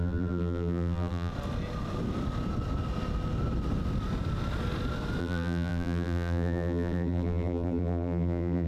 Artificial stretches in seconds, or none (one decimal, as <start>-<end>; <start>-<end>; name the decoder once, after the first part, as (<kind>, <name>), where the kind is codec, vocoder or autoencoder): 0.0-1.3 (vocoder, BigVGAN v2); 5.2-8.7